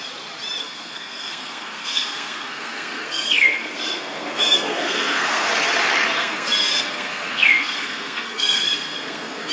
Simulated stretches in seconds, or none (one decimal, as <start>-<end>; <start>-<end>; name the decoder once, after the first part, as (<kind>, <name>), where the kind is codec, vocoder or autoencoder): 0.6-5.5 (codec, SNAC); 6.1-9.5